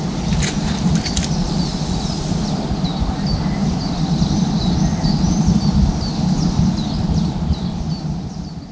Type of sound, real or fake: real